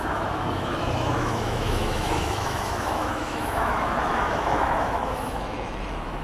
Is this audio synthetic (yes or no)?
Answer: yes